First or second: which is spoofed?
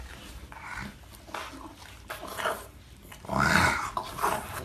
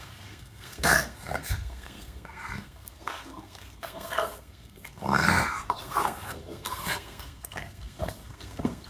second